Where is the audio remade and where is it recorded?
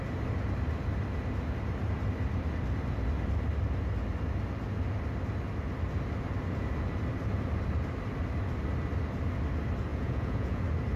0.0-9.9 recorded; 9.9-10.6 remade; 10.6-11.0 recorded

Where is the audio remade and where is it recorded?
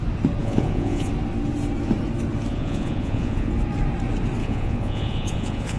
0.0-0.4 recorded; 0.4-1.1 remade; 1.1-2.5 recorded; 2.5-3.5 remade; 3.5-4.4 recorded; 4.4-5.8 remade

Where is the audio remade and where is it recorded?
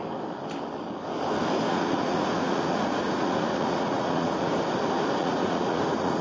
0.0-1.7 recorded; 1.7-4.5 remade; 4.5-5.2 recorded; 5.2-6.2 remade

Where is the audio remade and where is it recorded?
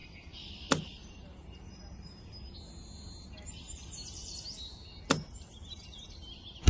0.0-6.7 recorded